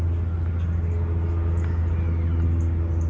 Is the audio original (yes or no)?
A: yes